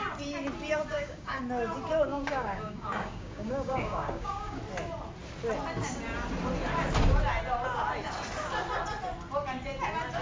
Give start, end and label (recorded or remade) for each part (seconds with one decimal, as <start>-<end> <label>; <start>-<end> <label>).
0.0-0.9 recorded; 0.9-1.4 remade; 1.4-2.1 recorded; 2.1-4.6 remade; 4.6-10.2 recorded